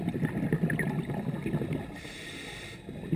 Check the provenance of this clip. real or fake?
real